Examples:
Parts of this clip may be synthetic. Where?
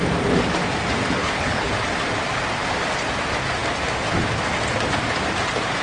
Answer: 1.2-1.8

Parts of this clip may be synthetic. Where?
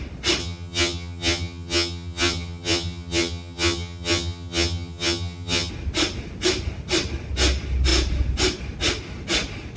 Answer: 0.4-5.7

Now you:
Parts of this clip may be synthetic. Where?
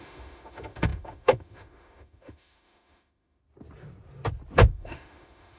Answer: 0.0-3.4; 4.7-5.6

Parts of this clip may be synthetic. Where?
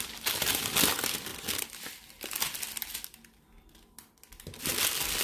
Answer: none